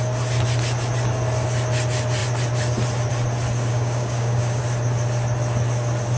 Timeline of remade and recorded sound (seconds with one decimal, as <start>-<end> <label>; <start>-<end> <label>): 0.0-3.7 recorded; 3.7-4.6 remade; 4.6-6.2 recorded